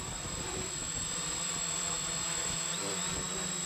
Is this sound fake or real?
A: fake